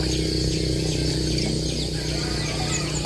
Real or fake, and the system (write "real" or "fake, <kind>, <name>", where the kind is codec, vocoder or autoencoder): real